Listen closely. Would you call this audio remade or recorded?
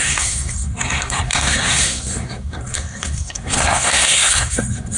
remade